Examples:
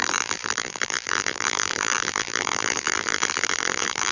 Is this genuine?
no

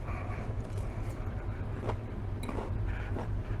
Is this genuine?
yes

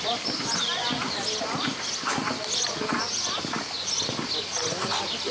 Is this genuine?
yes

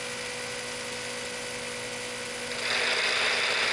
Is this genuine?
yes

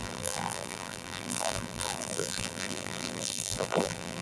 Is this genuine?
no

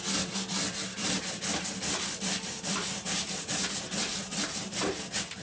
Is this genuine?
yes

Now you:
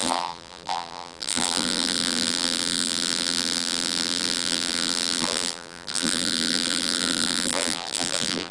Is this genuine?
no